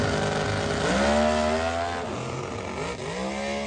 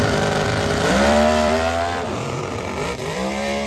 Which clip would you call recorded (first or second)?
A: first